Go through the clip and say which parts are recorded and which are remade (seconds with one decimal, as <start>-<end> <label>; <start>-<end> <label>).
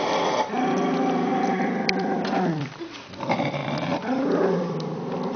0.0-3.6 remade; 3.6-4.5 recorded; 4.5-5.4 remade